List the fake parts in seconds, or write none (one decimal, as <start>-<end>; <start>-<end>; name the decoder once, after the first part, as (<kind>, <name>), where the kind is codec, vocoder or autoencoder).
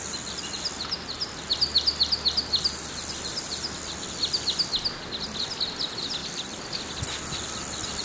none